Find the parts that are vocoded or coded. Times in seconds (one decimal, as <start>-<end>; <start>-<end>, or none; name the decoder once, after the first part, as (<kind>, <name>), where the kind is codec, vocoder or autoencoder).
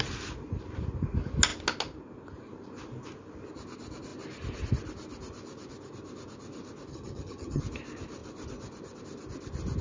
6.9-7.6 (vocoder, HiFi-GAN)